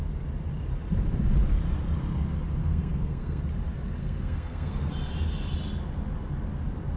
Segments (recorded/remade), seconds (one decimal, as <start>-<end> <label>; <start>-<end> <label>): 0.0-2.6 recorded; 2.6-3.4 remade; 3.4-4.0 recorded; 4.0-4.9 remade; 4.9-7.0 recorded